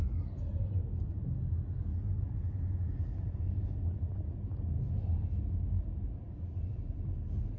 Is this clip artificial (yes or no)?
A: no